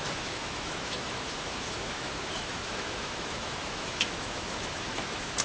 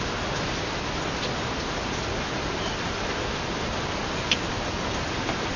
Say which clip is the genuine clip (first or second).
second